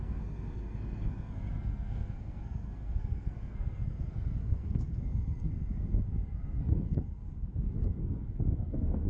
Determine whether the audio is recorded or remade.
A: remade